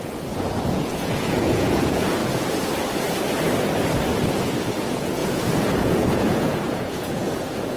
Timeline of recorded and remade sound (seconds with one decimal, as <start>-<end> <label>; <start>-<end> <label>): 0.0-2.2 remade; 2.2-4.3 recorded; 4.3-7.8 remade